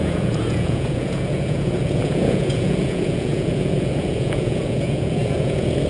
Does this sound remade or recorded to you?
remade